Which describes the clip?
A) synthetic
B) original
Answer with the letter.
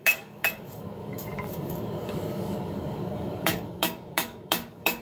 A